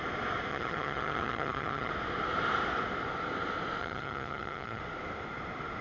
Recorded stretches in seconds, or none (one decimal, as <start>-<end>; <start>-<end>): 0.0-0.5; 1.9-3.8; 4.8-5.8